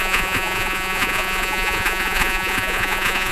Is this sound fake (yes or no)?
yes